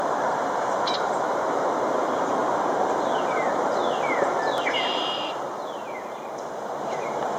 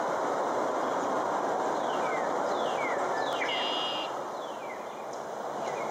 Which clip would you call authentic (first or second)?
second